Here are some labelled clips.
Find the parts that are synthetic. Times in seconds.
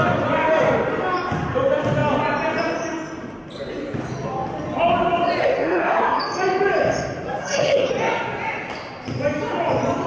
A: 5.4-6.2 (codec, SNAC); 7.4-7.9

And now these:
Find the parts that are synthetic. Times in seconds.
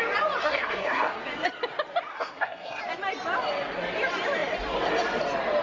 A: 0.4-1.2 (codec, SNAC); 2.1-2.8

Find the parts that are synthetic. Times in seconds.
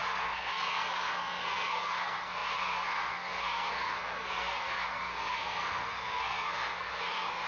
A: 0.0-7.5 (codec, SNAC)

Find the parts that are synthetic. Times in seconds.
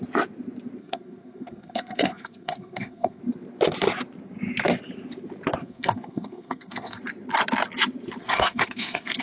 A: 0.8-3.2 (codec, SNAC); 5.6-7.0; 8.2-9.2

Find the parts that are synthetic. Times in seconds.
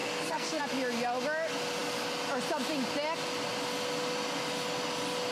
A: 0.0-0.6 (codec, SNAC)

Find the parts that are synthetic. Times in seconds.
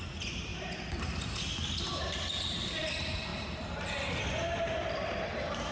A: none